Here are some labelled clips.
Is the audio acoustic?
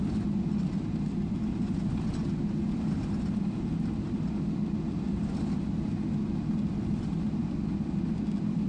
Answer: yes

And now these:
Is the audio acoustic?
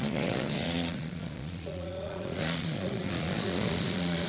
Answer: no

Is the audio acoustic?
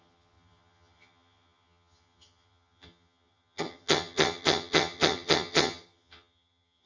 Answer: no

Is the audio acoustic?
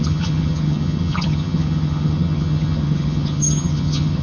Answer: no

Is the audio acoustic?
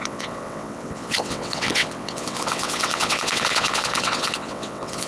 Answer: no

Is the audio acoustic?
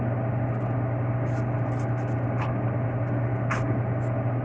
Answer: yes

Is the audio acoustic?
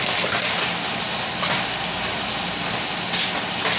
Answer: yes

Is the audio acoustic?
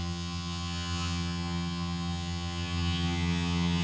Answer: no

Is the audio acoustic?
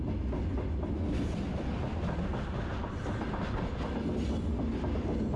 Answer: yes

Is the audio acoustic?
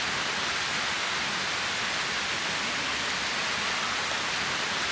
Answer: yes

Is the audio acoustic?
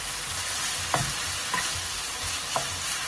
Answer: yes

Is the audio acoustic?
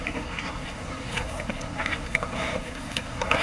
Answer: no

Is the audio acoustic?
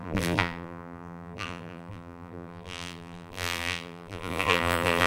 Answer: no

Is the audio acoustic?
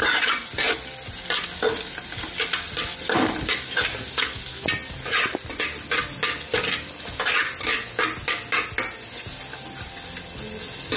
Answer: yes